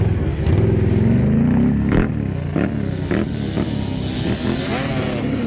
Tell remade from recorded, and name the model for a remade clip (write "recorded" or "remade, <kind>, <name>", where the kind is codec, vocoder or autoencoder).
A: recorded